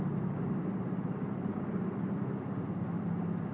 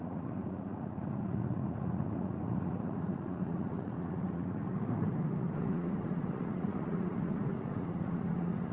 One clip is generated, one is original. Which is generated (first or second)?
second